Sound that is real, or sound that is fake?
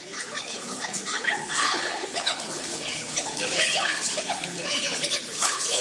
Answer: fake